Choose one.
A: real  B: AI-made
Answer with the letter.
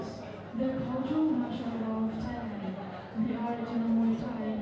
A